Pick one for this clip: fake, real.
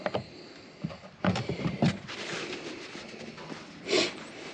real